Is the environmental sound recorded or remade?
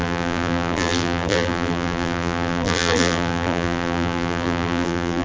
remade